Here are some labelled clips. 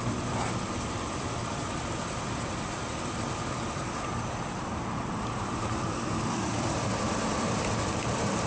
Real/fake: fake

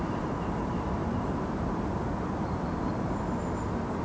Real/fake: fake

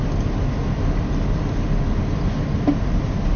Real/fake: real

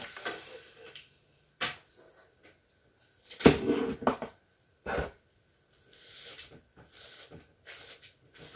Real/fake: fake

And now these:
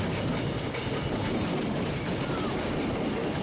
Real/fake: real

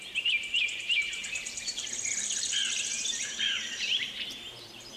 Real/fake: fake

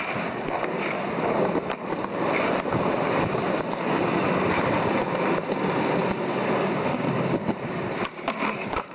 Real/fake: real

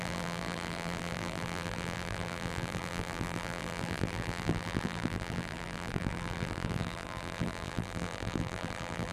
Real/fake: fake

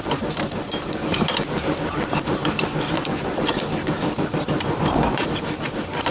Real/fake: fake